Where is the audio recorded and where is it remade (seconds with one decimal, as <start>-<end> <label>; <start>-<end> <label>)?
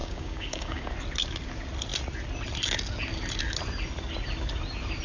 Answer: 0.0-0.9 remade; 0.9-5.0 recorded